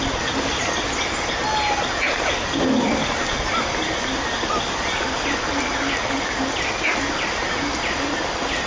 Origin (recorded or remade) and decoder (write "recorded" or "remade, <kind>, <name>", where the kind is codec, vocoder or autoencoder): recorded